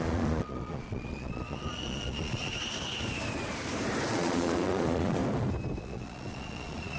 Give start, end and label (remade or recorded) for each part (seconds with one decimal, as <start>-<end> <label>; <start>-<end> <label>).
0.0-2.5 remade; 2.5-4.1 recorded; 4.1-5.2 remade; 5.2-5.8 recorded; 5.8-7.0 remade

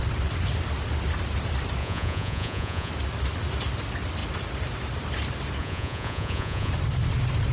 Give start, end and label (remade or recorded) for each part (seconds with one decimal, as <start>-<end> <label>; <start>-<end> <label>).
0.0-1.8 recorded; 1.8-2.9 remade; 2.9-5.6 recorded; 5.6-6.7 remade; 6.7-7.5 recorded